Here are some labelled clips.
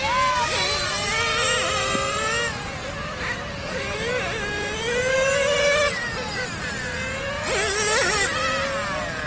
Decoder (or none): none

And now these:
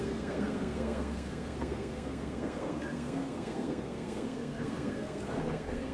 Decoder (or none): codec, SNAC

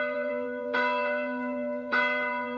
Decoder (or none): vocoder, BigVGAN v2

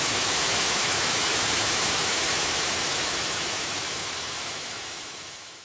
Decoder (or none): autoencoder, DAC-VAE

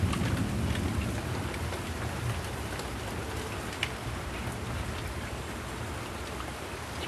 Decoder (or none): none